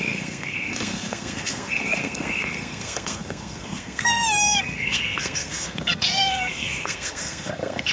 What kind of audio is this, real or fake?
fake